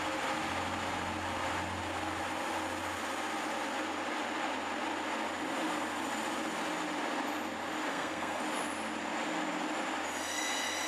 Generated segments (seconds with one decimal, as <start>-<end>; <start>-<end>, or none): 7.9-8.4